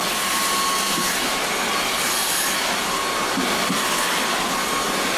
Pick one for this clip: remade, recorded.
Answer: recorded